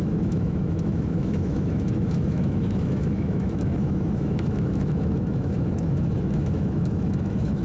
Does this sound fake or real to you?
fake